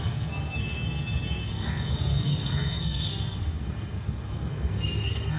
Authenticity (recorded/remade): remade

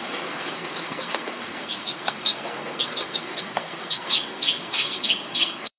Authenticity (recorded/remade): remade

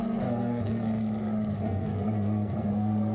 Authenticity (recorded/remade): remade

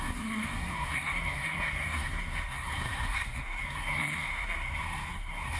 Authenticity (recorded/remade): remade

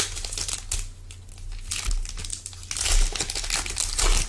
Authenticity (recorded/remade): recorded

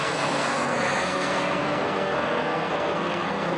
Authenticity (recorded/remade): remade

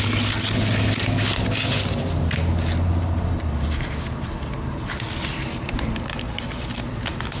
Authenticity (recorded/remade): recorded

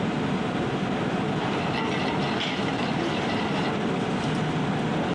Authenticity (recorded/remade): recorded